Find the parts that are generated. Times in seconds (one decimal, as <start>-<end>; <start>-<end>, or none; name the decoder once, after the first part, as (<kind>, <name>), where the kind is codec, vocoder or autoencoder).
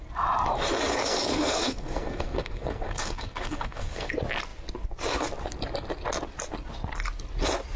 1.1-4.1 (codec, SNAC)